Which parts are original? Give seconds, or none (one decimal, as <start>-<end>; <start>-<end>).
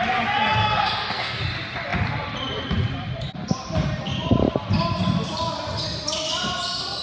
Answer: 0.0-0.6; 1.4-7.0